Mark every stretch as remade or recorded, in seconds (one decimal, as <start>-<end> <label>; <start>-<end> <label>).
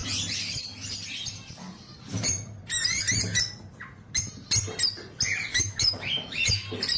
0.0-5.5 recorded; 5.5-6.5 remade; 6.5-7.0 recorded